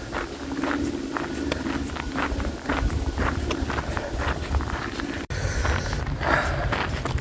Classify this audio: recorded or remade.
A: recorded